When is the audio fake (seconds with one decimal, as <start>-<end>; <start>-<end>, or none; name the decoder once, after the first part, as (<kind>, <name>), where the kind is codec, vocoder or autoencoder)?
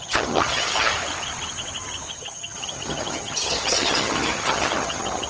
0.0-0.9 (vocoder, HiFi-GAN); 2.1-5.3